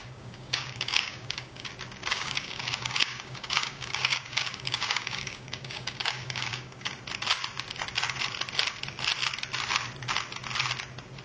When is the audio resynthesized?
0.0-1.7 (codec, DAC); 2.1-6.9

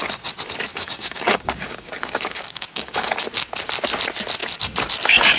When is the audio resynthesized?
0.7-3.2 (codec, DAC)